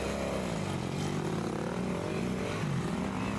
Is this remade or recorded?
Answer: recorded